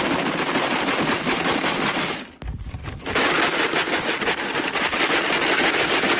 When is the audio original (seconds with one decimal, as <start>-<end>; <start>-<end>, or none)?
0.0-6.2